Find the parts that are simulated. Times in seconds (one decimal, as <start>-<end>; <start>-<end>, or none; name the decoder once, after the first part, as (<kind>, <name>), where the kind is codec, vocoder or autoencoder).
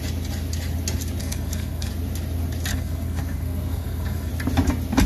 1.2-1.9 (codec, SNAC); 2.7-4.3